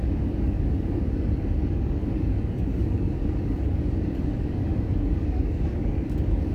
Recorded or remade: remade